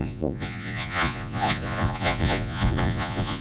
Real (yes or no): no